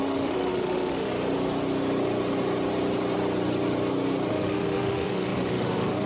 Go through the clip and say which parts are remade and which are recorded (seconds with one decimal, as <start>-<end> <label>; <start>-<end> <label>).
0.0-1.1 remade; 1.1-4.3 recorded; 4.3-6.1 remade